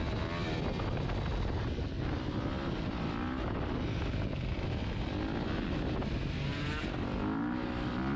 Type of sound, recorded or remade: recorded